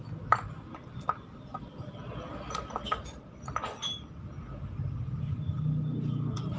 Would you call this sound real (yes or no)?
yes